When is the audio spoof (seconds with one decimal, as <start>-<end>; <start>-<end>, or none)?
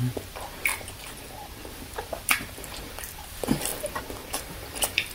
0.0-3.7; 4.3-5.1